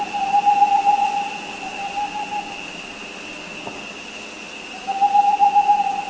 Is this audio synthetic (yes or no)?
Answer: no